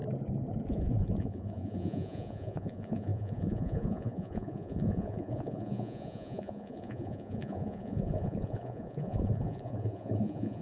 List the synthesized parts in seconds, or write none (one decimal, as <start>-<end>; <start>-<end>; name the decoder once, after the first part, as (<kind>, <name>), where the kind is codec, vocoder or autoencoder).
0.7-10.6 (vocoder, Vocos)